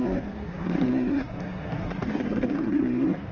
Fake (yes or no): yes